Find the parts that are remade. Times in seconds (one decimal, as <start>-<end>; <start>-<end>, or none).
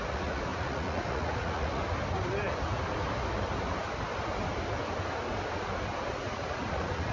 0.0-1.8; 6.1-7.1